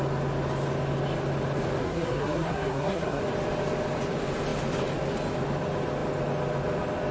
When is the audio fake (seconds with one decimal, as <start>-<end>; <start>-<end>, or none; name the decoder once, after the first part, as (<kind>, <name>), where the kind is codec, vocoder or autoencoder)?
1.8-3.2 (codec, SNAC)